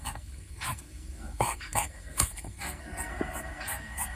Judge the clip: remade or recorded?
remade